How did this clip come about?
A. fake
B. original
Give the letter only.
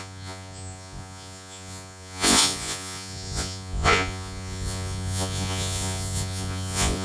A